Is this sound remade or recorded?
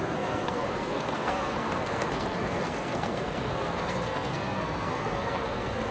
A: remade